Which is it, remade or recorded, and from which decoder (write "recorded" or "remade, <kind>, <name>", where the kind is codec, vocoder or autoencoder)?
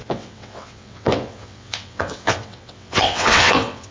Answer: remade, vocoder, WaveNeXt